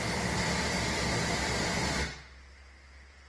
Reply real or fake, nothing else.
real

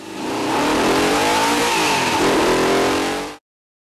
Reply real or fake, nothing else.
fake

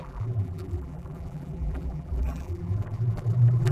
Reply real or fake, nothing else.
fake